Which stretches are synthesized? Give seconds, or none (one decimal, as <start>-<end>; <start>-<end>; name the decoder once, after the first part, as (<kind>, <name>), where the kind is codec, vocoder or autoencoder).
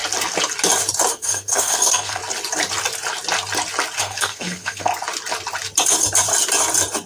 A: 1.1-2.2 (codec, SNAC); 4.0-4.9